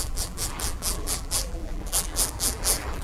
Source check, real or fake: fake